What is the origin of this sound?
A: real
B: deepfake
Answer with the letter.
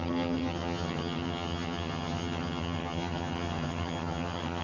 B